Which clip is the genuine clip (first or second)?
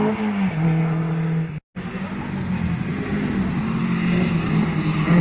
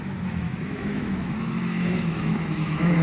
first